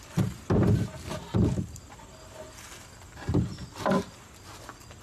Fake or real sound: real